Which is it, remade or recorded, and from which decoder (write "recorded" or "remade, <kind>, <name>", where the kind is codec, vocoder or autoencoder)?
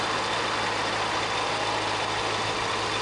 recorded